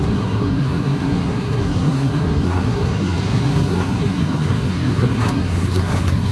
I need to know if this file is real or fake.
fake